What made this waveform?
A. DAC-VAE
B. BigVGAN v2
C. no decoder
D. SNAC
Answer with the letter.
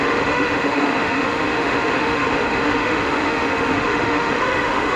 A